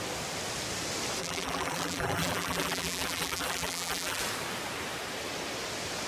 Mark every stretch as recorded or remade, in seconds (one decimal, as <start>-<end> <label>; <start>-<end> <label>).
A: 0.0-1.2 recorded; 1.2-4.2 remade; 4.2-6.1 recorded